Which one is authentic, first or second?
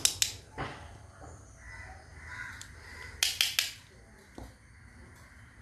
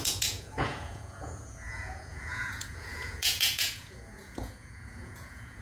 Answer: first